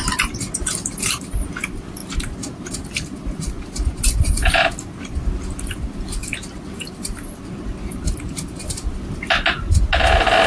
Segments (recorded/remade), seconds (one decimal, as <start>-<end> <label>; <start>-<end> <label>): 0.0-10.5 recorded